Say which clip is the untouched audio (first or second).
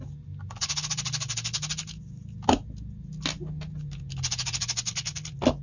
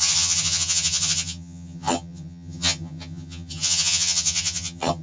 first